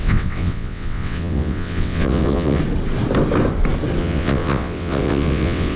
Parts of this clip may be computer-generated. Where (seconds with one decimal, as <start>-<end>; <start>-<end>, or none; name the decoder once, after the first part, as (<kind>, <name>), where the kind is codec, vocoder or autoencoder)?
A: 0.0-2.6 (vocoder, WaveNeXt); 4.0-5.8